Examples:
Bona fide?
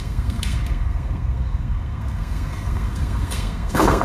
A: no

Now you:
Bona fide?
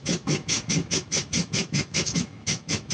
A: no